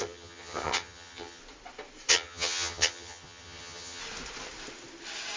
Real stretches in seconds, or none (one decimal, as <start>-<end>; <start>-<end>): 1.4-2.1; 4.0-5.4